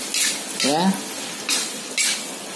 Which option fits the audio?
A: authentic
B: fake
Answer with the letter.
A